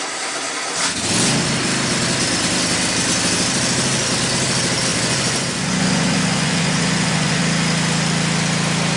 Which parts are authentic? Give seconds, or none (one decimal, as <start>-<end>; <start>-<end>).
0.0-4.9; 7.4-9.0